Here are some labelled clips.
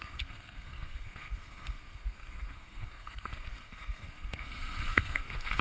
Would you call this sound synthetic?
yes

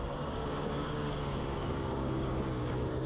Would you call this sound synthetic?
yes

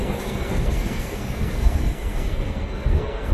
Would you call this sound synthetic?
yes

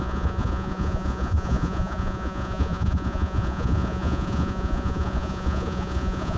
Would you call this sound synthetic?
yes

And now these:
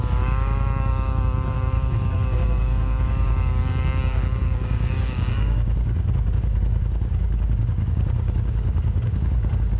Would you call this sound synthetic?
yes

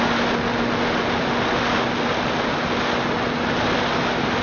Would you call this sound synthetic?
no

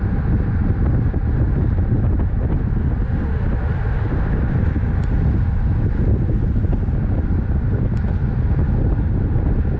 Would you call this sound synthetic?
no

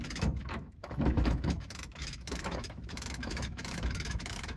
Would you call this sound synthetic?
yes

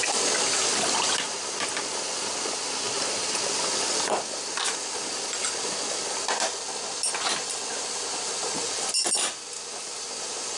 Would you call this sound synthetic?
no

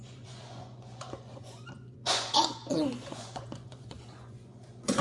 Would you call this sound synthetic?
yes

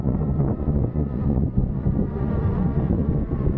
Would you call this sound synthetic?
yes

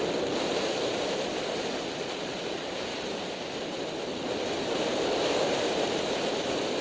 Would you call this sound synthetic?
yes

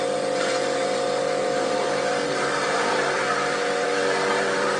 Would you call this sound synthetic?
yes